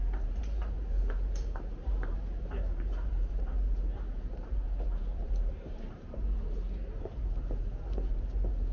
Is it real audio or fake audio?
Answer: fake